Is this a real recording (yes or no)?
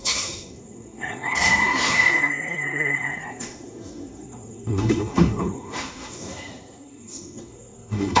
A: no